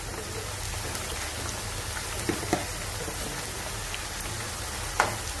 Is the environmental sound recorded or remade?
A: recorded